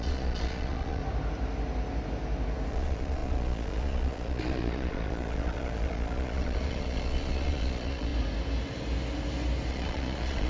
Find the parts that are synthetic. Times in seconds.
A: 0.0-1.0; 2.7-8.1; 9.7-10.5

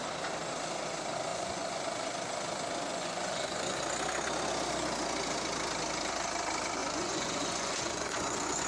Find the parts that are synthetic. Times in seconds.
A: 1.3-1.8; 2.9-3.8; 6.8-8.7